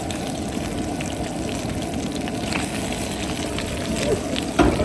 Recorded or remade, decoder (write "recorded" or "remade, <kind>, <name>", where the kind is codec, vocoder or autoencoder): recorded